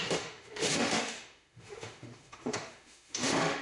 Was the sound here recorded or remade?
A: remade